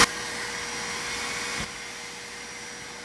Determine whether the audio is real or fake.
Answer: real